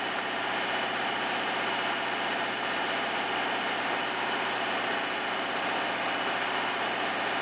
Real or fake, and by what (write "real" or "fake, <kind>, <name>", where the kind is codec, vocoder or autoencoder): fake, vocoder, BigVGAN v2